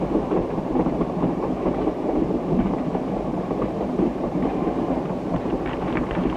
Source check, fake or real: fake